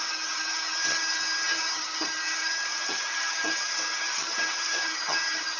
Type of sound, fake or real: fake